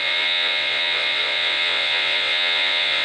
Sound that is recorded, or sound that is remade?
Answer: remade